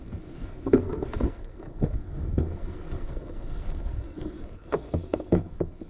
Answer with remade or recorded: remade